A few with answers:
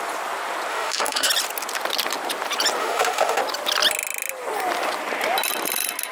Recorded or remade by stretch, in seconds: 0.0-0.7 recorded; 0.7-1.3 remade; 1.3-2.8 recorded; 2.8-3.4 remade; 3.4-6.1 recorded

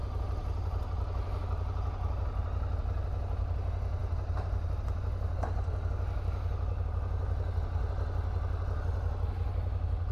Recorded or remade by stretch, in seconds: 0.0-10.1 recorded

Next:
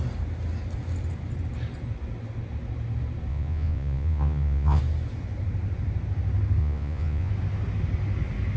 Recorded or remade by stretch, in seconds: 0.0-3.3 recorded; 3.3-4.8 remade; 4.8-6.6 recorded; 6.6-7.3 remade; 7.3-8.6 recorded

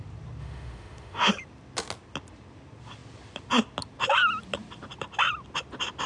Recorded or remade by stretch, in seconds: 0.0-0.4 recorded; 0.4-1.3 remade; 1.3-6.1 recorded

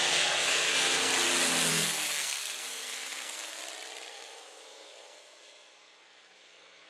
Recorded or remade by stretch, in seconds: 0.0-1.1 remade; 1.1-1.7 recorded; 1.7-3.6 remade; 3.6-4.1 recorded; 4.1-6.9 remade

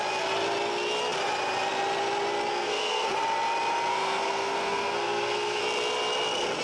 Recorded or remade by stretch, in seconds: 0.0-2.5 recorded; 2.5-3.1 remade; 3.1-3.9 recorded; 3.9-5.6 remade; 5.6-6.6 recorded

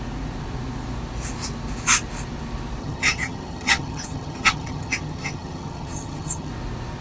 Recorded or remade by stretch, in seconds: 0.0-2.8 recorded; 2.8-6.5 remade; 6.5-7.0 recorded

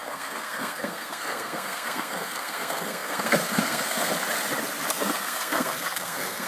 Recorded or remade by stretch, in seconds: 0.0-4.1 remade; 4.1-4.9 recorded; 4.9-6.5 remade